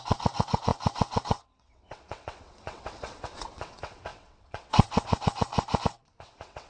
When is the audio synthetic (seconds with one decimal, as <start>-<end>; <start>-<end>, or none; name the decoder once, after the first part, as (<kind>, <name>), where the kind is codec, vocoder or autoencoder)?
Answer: 0.0-5.5 (vocoder, WaveNeXt); 6.2-6.7